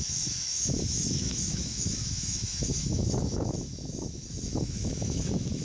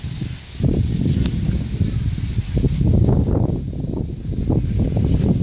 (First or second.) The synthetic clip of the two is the first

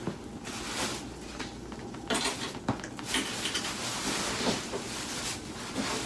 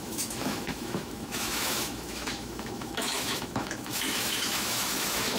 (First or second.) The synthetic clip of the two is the second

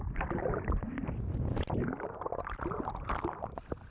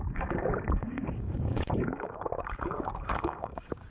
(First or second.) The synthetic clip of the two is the second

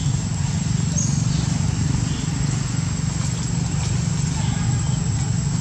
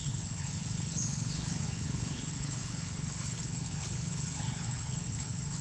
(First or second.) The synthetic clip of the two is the second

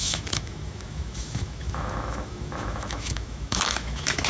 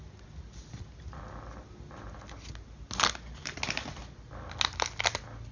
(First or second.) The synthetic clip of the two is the first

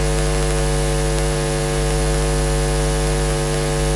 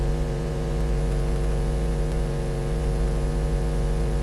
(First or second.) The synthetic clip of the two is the second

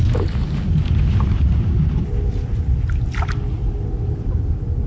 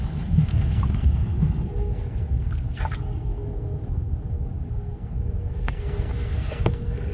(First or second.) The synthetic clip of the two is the second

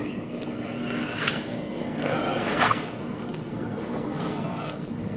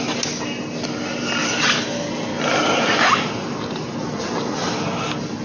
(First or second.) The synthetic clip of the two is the first